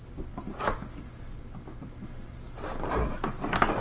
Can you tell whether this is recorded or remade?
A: recorded